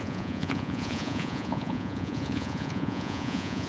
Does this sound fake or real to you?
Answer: fake